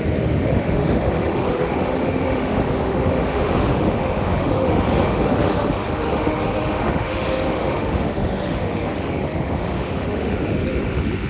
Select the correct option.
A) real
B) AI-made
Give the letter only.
B